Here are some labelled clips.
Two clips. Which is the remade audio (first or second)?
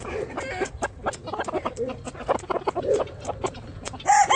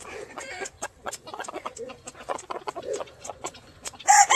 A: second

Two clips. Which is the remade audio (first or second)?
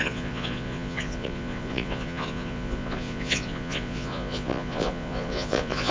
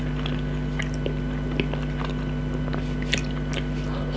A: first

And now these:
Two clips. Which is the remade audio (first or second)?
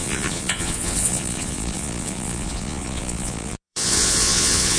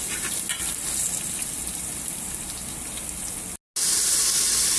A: first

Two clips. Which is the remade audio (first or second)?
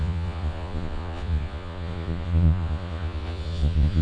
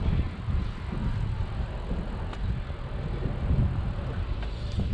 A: first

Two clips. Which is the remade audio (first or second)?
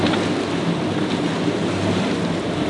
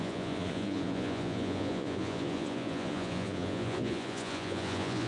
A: second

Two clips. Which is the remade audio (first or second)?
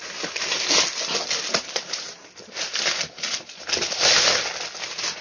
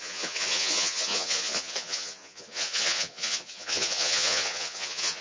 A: second